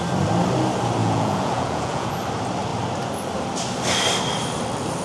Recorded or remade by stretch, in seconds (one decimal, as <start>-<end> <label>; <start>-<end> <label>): 0.0-1.0 recorded; 1.0-2.1 remade; 2.1-5.0 recorded